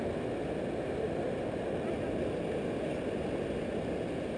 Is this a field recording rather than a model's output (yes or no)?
yes